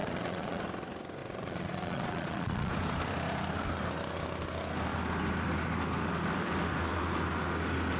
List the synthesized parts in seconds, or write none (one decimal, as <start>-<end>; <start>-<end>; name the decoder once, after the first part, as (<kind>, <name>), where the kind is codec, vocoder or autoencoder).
0.0-0.6 (vocoder, Vocos); 1.2-2.7